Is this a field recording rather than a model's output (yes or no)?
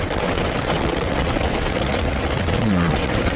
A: no